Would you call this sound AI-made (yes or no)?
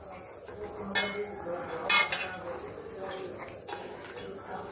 no